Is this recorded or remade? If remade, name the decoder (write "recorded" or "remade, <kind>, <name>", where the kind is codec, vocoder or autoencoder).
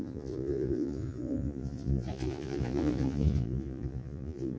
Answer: remade, vocoder, Vocos